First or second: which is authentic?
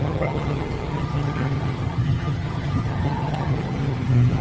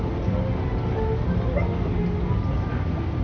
second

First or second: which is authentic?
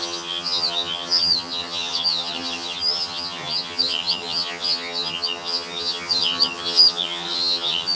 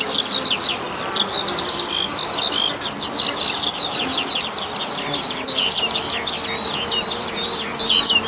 second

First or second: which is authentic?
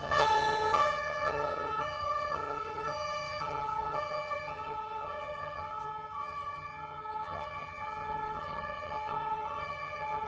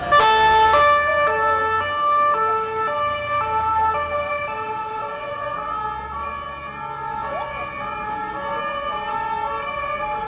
second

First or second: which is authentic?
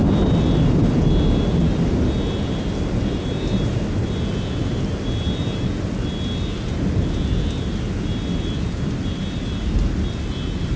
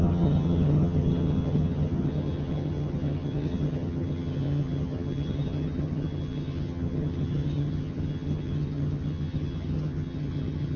first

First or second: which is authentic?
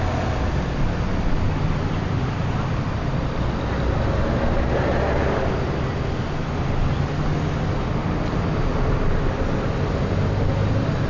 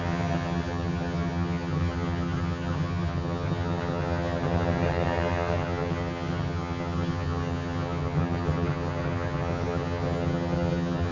first